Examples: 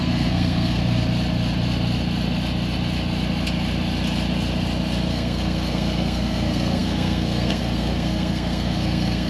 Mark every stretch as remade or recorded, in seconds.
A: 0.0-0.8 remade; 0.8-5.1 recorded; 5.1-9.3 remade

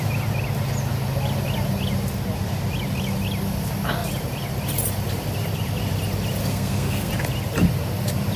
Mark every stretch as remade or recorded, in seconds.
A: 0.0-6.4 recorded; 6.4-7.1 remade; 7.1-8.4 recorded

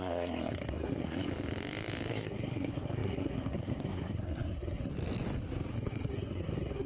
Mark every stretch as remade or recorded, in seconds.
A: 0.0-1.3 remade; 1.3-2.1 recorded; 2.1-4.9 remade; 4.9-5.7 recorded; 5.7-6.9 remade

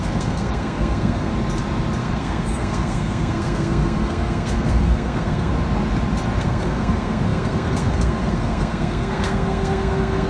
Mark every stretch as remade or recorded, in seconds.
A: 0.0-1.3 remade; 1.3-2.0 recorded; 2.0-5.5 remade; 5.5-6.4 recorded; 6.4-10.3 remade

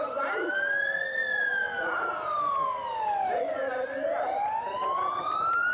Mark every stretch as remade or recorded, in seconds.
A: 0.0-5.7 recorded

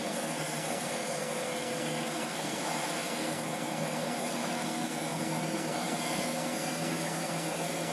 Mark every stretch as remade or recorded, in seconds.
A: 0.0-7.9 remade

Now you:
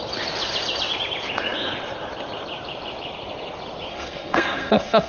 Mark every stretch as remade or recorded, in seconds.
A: 0.0-3.9 recorded; 3.9-5.1 remade